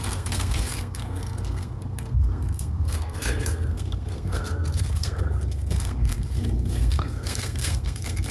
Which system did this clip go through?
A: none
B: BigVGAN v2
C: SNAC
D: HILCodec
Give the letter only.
C